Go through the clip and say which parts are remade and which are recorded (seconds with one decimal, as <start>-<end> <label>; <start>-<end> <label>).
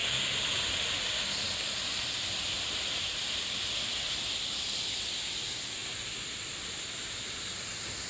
0.0-8.1 recorded